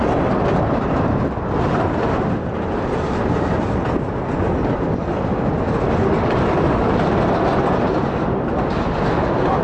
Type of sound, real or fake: real